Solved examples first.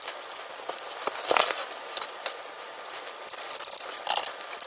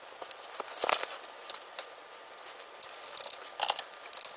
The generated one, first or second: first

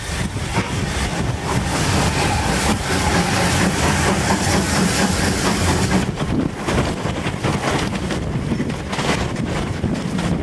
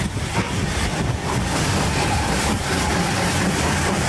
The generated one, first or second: second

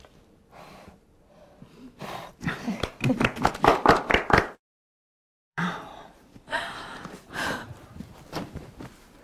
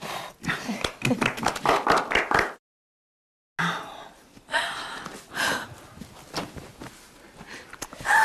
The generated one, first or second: first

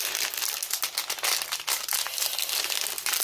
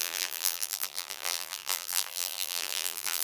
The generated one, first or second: second